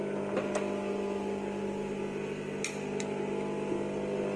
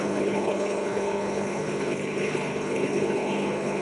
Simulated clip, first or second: second